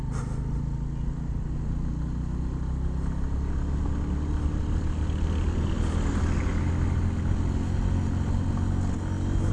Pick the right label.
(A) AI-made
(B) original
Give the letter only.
B